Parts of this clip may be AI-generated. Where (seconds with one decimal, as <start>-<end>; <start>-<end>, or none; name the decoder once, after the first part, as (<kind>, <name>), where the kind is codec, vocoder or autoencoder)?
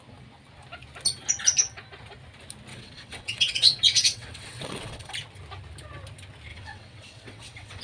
2.7-5.1 (vocoder, WaveNeXt); 6.5-7.8